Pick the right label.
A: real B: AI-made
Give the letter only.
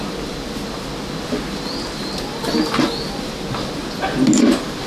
A